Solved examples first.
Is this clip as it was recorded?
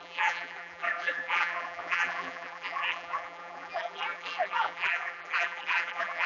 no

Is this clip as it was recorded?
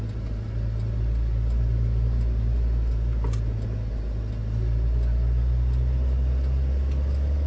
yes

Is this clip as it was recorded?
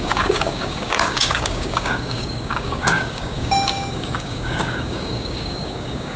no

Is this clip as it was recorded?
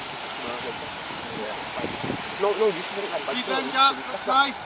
yes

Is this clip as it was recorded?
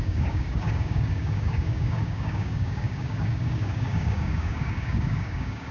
no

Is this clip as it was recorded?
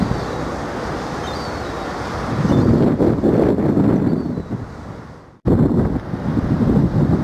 yes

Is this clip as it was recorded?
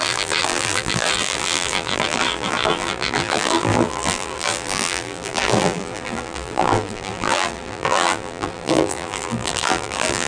no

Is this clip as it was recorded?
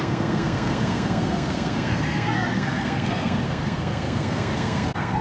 no